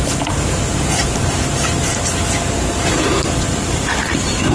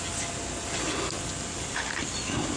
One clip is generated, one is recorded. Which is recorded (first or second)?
second